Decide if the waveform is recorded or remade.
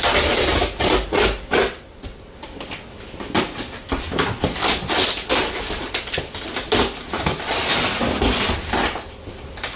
recorded